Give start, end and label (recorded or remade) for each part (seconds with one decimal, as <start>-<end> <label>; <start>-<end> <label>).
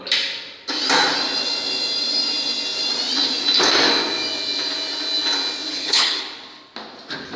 0.0-5.7 recorded; 5.7-6.2 remade; 6.2-7.4 recorded